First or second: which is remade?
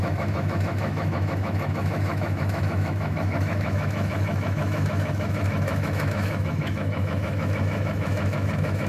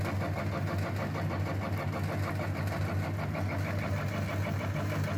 first